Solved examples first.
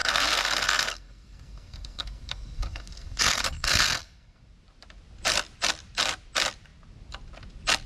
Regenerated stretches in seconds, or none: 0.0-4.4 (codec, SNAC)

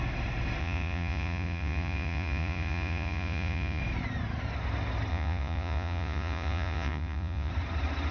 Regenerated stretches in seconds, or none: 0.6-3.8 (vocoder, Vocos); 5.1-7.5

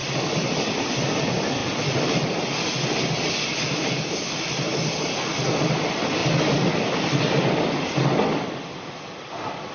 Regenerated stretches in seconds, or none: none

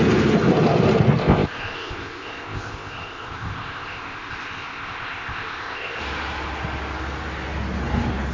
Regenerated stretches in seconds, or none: 1.2-6.0 (codec, ZipCodec)